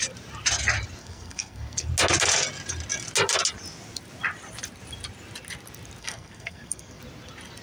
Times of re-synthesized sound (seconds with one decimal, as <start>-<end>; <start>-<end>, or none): 1.0-1.9; 6.0-7.0